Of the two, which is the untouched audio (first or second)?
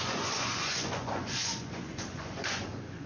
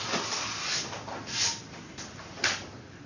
second